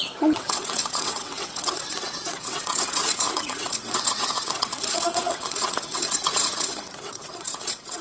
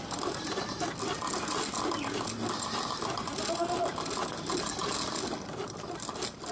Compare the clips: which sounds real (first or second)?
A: second